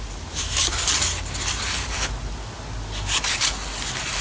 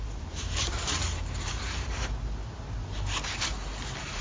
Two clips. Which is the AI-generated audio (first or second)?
second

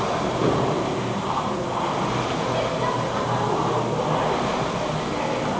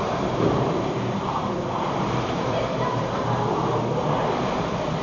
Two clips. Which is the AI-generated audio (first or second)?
second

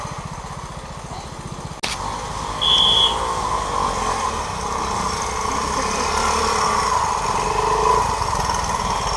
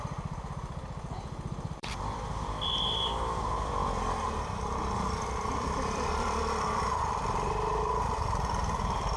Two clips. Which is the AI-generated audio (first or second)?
second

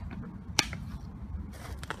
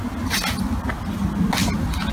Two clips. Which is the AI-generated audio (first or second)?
first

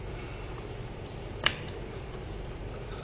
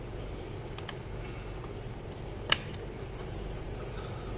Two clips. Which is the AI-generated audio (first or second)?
first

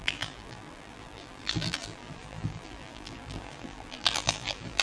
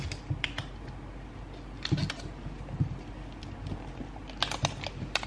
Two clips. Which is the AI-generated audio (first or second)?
first